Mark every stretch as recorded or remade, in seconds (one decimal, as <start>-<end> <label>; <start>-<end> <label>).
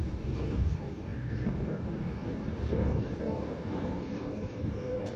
0.0-5.2 remade